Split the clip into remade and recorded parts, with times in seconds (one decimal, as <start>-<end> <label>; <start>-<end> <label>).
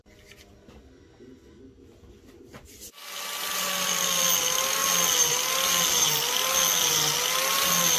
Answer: 0.0-8.0 recorded